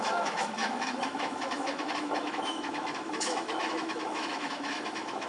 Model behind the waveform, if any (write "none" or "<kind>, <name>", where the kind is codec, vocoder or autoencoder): autoencoder, DAC-VAE